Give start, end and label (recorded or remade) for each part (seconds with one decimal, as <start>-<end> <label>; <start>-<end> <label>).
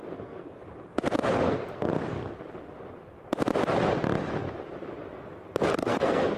0.0-0.6 remade; 0.6-1.3 recorded; 1.3-1.9 remade; 1.9-5.7 recorded; 5.7-6.4 remade